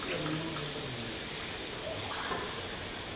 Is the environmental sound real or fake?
real